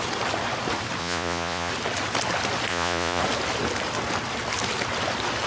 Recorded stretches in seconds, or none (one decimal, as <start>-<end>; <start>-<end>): 0.0-1.0; 1.7-2.7; 3.2-5.5